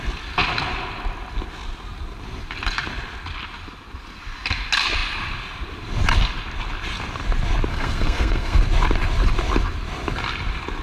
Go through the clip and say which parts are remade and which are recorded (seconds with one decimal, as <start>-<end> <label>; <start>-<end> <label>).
0.0-7.7 recorded; 7.7-8.6 remade; 8.6-10.8 recorded